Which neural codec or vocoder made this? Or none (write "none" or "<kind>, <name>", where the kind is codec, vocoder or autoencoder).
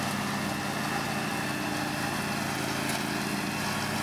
none